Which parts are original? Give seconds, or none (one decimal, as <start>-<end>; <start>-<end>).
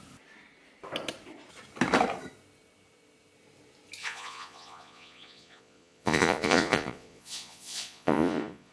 0.0-4.0